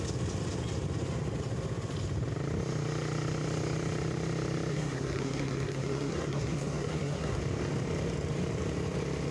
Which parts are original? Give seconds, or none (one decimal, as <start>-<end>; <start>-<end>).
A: 0.0-4.7; 7.4-9.3